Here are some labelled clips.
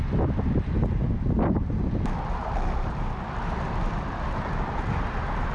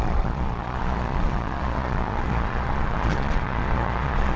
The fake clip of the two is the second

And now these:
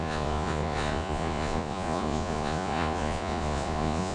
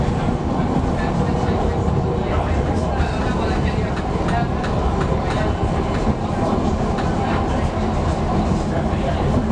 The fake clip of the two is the first